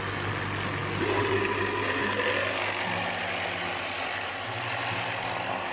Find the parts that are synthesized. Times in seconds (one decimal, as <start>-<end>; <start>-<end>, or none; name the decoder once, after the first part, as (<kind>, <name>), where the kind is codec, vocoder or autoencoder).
none